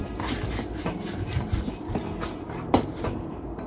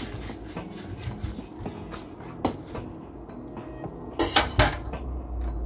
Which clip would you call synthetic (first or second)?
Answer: first